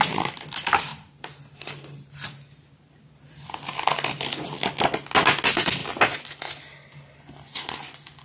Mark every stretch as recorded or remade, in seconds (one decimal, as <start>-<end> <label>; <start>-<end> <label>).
0.0-8.2 recorded